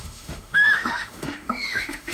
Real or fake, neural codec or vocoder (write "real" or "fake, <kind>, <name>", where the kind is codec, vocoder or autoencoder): fake, autoencoder, DAC-VAE